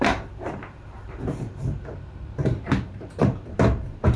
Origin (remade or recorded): remade